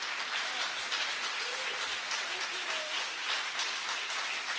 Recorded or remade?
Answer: recorded